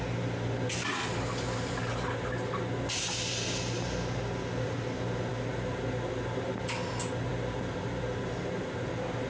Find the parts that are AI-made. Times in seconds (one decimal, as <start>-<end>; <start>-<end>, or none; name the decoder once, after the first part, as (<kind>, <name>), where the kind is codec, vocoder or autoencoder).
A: none